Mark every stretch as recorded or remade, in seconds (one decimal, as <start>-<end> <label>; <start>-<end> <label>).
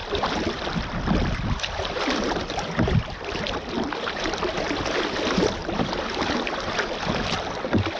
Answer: 0.0-4.8 remade; 4.8-5.6 recorded; 5.6-6.6 remade; 6.6-8.0 recorded